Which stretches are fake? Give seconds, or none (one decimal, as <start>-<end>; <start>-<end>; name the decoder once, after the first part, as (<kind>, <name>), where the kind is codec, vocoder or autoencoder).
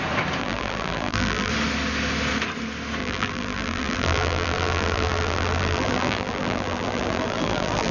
0.4-1.5 (vocoder, BigVGAN v2); 3.0-7.9